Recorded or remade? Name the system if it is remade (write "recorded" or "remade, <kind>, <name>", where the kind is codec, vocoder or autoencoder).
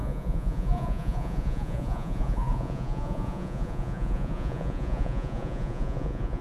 remade, vocoder, Vocos